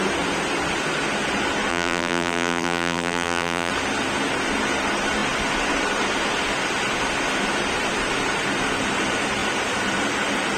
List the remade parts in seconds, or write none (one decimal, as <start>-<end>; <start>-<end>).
1.7-3.7